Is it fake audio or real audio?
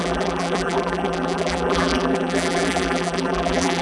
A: fake